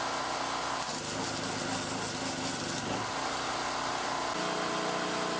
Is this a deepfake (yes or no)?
no